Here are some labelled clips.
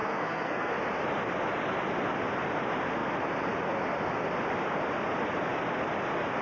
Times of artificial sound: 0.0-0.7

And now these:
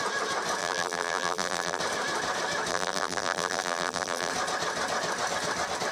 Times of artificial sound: 0.6-1.8; 2.7-4.3

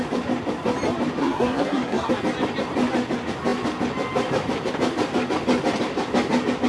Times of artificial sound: 1.2-2.1